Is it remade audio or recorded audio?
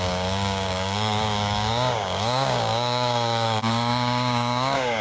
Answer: remade